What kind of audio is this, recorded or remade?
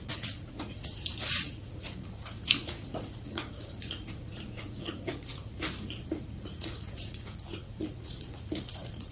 remade